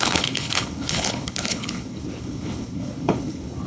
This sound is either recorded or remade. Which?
remade